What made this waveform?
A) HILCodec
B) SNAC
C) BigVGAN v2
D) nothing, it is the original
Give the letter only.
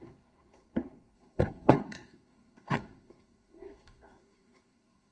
B